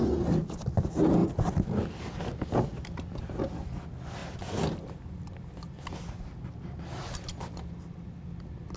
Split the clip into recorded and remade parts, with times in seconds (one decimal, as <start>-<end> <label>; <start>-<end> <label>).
0.0-8.8 recorded